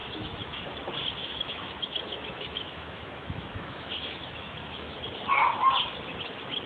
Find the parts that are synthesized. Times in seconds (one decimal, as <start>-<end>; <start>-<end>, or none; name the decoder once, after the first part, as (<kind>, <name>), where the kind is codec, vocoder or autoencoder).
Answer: 0.0-0.6 (autoencoder, DAC-VAE); 1.2-5.0